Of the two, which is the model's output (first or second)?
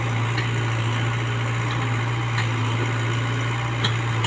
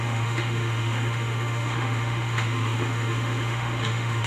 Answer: second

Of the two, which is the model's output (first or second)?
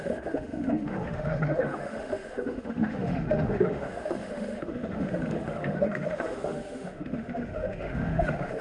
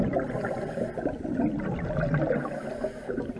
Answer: first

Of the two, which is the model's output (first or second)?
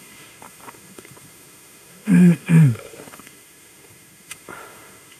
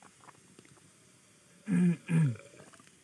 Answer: first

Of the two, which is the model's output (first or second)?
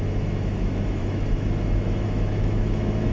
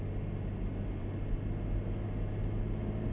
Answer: first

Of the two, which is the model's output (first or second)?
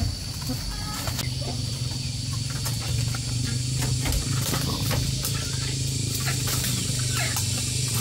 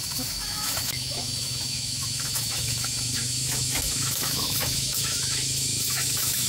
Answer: second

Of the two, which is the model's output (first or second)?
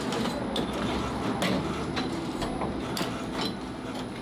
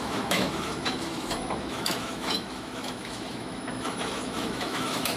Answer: second